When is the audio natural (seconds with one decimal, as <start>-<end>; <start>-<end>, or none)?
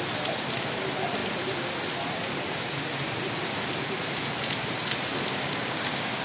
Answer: 0.0-5.5